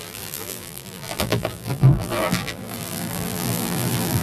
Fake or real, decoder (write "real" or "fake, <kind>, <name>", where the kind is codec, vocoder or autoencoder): fake, vocoder, BigVGAN v2